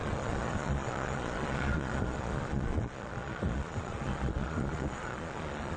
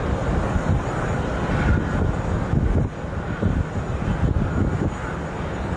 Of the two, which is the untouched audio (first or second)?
second